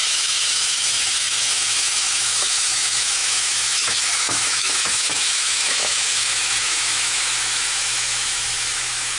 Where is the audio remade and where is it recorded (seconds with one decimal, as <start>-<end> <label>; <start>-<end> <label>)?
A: 0.0-9.2 remade